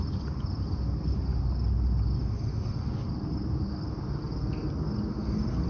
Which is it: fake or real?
real